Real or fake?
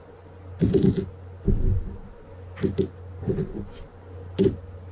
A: real